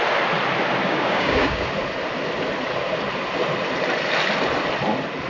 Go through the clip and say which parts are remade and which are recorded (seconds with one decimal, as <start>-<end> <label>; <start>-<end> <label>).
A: 0.0-0.8 recorded; 0.8-1.7 remade; 1.7-5.3 recorded